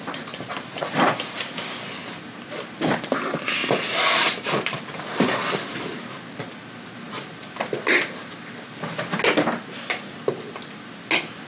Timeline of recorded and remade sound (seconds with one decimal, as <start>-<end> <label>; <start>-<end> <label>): 0.0-11.5 recorded